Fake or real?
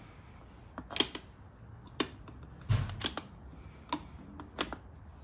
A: real